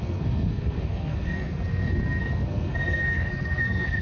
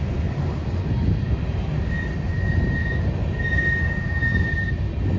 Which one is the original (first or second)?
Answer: second